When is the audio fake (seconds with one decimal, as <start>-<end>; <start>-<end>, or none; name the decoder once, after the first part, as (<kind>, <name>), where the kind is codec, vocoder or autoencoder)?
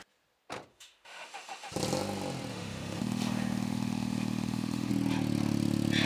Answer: 0.7-1.7 (autoencoder, DAC-VAE); 2.5-4.9